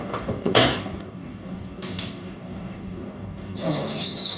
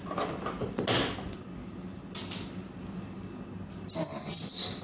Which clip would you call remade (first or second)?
first